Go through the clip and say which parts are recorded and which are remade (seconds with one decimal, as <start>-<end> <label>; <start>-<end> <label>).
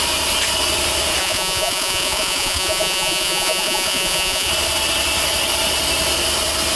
0.0-1.2 recorded; 1.2-4.5 remade; 4.5-6.8 recorded